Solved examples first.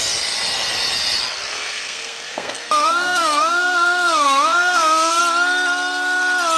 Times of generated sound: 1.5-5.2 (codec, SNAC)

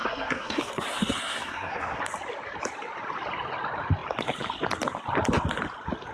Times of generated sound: 0.0-2.0 (codec, SNAC)

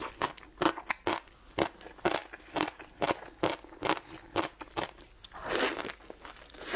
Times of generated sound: none

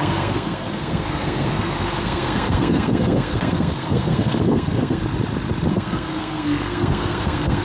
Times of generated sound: 0.0-5.0 (codec, SNAC); 5.7-7.6

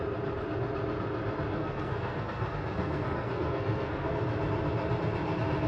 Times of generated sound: 1.5-4.1 (codec, SNAC)

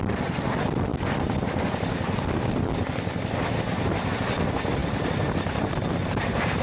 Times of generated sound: none

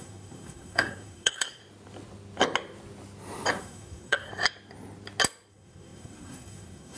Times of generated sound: 0.0-1.6 (codec, SNAC); 3.6-4.3; 5.5-7.0

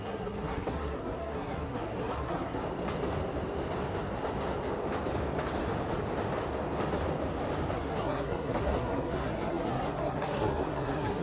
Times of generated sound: 0.0-2.6 (codec, SNAC); 7.7-11.2